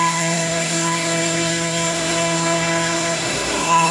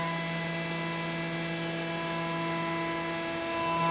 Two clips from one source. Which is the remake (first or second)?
first